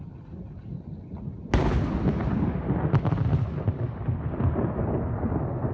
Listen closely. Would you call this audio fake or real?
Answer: real